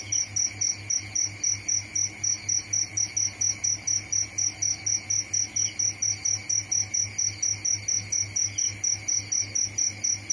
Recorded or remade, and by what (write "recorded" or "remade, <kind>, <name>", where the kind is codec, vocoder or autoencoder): recorded